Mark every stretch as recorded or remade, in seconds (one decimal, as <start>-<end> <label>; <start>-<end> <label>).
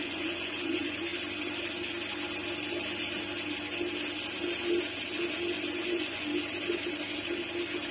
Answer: 0.0-1.1 remade; 1.1-5.8 recorded; 5.8-6.3 remade; 6.3-7.9 recorded